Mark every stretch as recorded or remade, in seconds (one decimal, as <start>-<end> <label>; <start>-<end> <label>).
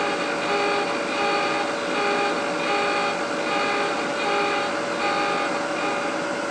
0.0-6.5 recorded